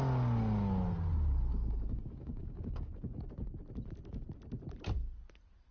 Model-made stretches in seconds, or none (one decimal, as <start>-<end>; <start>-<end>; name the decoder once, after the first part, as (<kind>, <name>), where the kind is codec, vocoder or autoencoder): 1.5-3.3 (codec, DAC)

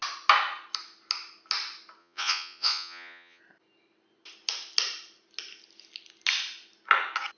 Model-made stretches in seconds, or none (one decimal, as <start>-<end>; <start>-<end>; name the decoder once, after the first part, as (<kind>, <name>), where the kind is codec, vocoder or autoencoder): 2.0-3.4 (vocoder, Vocos)

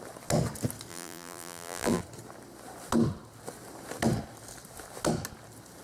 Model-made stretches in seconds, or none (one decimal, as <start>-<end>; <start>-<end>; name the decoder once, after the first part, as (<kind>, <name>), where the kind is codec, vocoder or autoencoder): 0.9-2.0 (vocoder, BigVGAN v2)

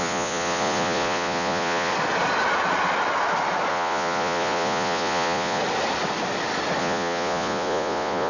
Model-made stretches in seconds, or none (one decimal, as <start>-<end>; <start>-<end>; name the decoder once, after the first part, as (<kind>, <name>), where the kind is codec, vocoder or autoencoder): 0.0-1.9 (vocoder, Vocos); 3.7-5.6; 6.8-8.3